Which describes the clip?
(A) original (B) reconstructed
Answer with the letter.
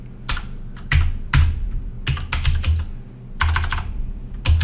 A